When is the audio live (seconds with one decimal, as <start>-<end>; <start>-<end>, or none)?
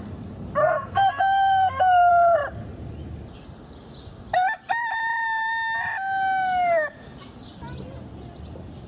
0.0-0.6; 2.1-8.9